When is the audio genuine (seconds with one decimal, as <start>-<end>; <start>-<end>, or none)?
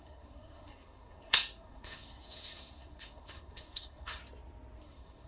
4.2-4.8